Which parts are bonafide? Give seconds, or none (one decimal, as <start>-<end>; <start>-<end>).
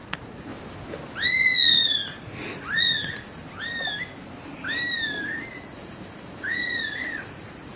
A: 0.5-1.3; 2.0-2.5; 3.4-5.5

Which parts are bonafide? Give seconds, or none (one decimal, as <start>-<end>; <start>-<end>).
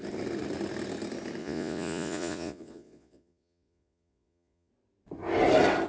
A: 0.0-1.4; 4.7-5.9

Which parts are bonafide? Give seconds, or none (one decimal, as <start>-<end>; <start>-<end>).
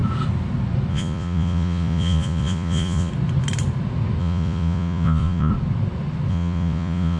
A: 0.0-0.9; 3.1-4.2; 5.5-6.3